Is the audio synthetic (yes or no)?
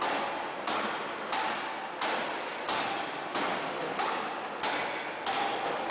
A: no